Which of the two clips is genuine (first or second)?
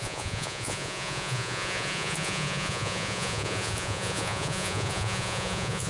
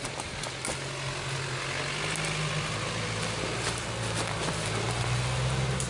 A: second